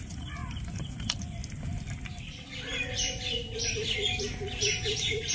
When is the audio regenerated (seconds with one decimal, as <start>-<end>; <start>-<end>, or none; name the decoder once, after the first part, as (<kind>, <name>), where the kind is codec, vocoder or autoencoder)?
0.0-0.4 (vocoder, BigVGAN v2); 0.9-1.4; 4.6-5.3